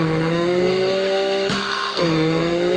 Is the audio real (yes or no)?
no